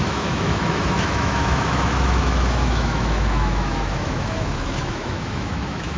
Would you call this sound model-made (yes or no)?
yes